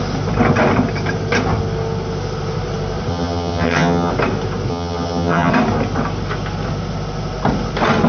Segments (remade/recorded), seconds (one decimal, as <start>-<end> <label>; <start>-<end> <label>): 0.0-3.1 recorded; 3.1-4.1 remade; 4.1-4.7 recorded; 4.7-5.5 remade; 5.5-8.1 recorded